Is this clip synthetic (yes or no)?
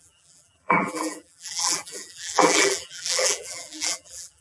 yes